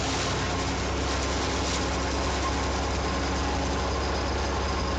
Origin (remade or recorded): recorded